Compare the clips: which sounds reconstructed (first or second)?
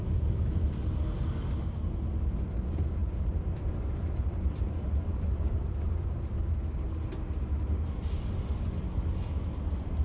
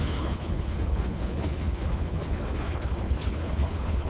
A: second